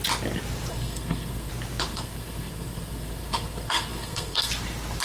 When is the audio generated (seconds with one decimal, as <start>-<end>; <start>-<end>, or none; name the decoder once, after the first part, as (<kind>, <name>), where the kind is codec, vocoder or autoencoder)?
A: 0.7-1.5 (codec, SNAC); 1.9-4.5